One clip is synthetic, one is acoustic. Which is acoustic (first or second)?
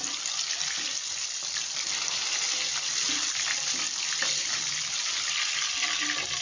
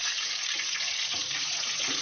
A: first